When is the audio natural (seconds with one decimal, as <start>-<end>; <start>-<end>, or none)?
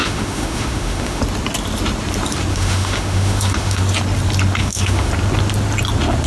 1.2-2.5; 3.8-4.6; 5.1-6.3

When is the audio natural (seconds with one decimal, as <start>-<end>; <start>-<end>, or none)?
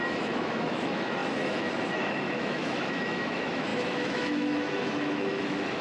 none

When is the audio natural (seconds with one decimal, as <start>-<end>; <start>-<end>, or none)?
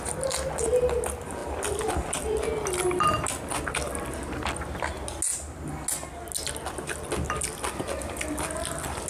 0.0-9.1